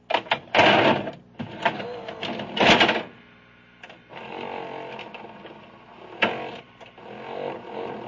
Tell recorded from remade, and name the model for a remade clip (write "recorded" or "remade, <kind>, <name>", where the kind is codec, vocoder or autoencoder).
recorded